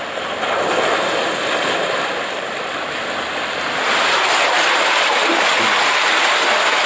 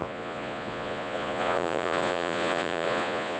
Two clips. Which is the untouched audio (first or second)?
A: first